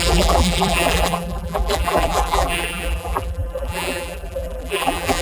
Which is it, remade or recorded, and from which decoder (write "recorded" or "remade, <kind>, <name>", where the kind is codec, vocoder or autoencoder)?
remade, vocoder, BigVGAN v2